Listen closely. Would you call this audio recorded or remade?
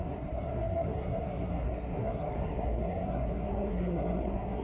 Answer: remade